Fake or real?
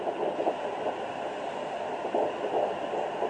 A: real